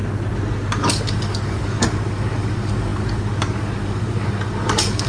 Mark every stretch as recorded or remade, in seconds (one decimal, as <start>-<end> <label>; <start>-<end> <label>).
0.0-0.8 recorded; 0.8-5.1 remade